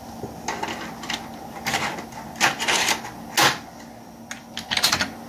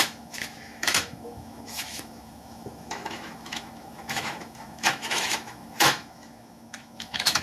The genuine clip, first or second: first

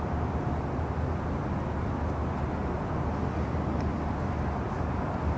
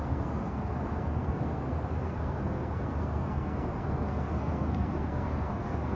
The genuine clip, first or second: first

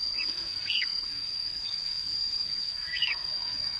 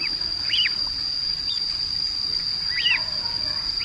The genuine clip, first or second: second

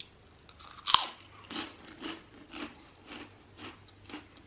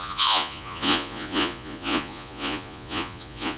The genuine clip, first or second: first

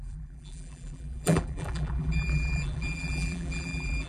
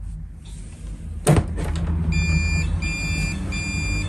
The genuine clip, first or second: second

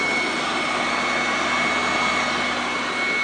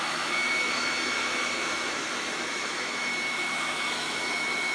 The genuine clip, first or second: first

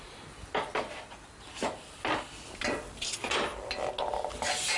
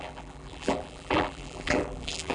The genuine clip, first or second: first